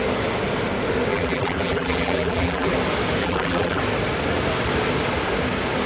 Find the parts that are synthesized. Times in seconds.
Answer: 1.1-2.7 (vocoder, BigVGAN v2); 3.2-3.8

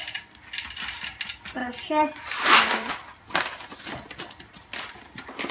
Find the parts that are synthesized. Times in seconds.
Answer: 1.6-2.9 (vocoder, BigVGAN v2)